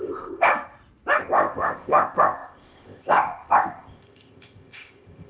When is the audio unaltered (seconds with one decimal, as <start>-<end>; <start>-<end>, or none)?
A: 0.5-1.2